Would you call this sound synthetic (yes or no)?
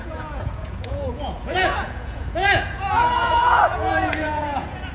yes